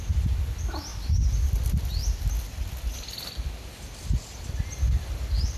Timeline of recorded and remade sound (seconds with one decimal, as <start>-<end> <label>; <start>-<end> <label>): 0.0-5.6 recorded